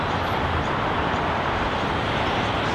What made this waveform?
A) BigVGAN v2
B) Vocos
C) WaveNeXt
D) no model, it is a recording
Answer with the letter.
A